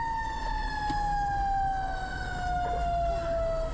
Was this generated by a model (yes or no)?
no